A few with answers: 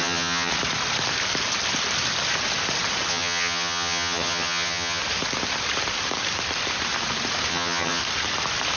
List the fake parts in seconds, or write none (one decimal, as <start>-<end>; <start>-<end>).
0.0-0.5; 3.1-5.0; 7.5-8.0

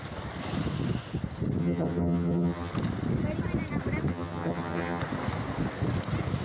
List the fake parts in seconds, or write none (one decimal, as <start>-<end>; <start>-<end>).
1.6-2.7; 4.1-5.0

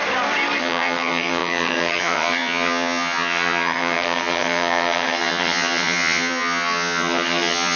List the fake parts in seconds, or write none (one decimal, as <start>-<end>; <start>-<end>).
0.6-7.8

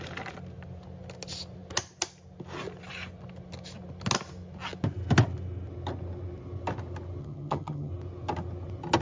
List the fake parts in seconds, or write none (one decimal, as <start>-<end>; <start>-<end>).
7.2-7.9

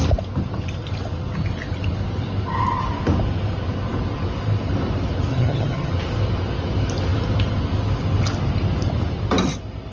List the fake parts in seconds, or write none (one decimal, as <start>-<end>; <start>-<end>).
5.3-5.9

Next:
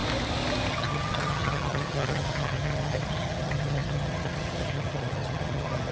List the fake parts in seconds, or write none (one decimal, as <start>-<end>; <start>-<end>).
0.7-5.9

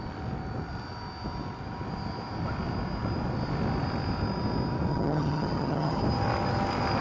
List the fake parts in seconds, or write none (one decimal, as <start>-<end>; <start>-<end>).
4.9-6.0

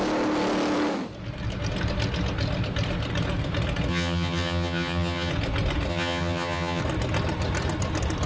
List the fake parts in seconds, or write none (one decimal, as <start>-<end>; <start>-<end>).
3.9-5.3; 5.9-6.8